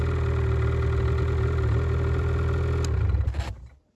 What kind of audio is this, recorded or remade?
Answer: recorded